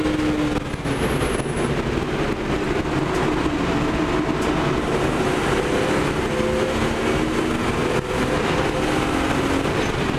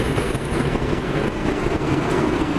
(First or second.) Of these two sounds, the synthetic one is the second